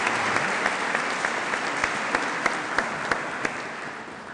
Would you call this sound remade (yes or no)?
no